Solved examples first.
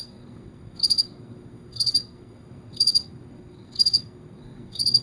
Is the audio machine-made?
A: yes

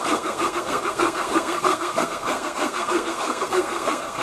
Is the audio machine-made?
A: yes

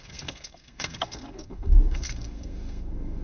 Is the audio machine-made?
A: yes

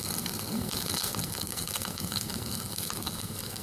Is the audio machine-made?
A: yes